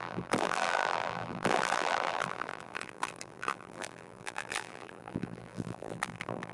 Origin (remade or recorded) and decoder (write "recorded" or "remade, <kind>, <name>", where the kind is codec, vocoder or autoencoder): remade, vocoder, BigVGAN v2